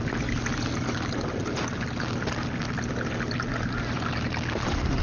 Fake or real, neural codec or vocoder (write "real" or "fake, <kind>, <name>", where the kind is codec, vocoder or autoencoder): real